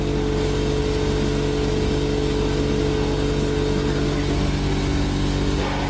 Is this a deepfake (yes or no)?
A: no